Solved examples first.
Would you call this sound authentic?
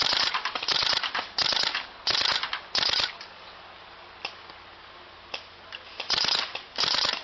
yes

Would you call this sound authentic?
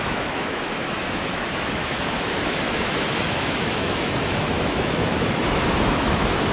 no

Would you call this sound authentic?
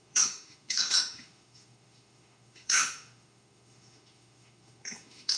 no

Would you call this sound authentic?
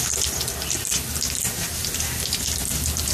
yes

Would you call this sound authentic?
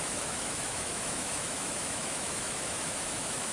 no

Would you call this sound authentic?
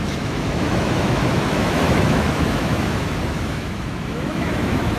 no